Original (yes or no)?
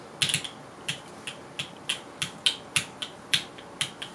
yes